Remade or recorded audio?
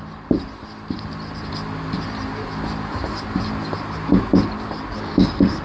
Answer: recorded